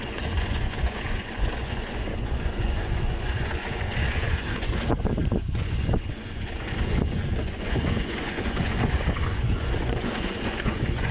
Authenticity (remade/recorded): remade